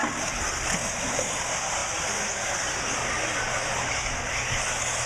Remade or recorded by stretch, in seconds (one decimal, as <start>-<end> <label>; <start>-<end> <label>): 0.0-5.1 recorded